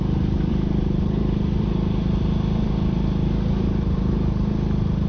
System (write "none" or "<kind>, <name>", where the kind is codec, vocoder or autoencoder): none